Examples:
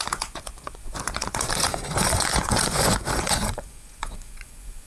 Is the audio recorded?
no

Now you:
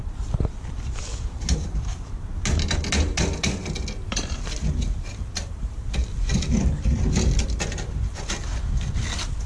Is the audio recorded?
yes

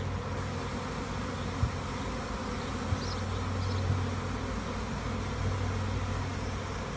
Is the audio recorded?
yes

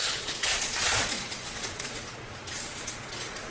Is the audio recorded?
no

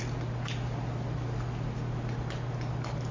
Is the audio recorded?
yes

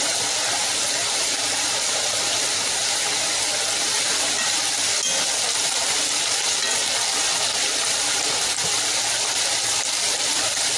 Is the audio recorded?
yes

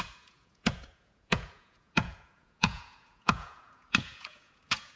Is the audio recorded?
no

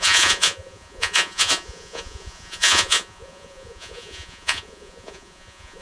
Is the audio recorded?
no